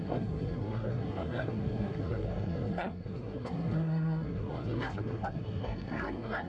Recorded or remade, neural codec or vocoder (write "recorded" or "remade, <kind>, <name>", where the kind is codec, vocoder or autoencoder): remade, codec, SNAC